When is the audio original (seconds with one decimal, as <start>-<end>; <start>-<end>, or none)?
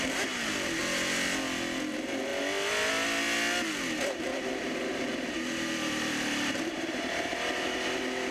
0.0-4.3; 7.3-8.3